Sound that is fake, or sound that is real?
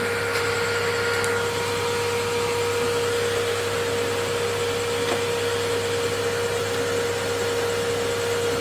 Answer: real